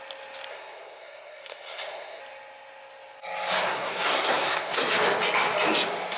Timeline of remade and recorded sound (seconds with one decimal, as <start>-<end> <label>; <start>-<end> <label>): 0.0-0.5 recorded; 0.5-2.2 remade; 2.2-3.7 recorded; 3.7-4.9 remade; 4.9-6.2 recorded